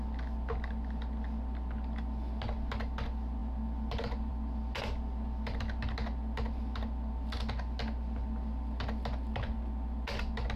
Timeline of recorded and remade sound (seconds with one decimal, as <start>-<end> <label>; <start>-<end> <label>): 0.0-10.6 recorded